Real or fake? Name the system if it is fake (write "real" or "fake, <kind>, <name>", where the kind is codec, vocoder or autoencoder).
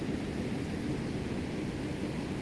real